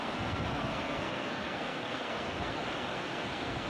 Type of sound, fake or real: fake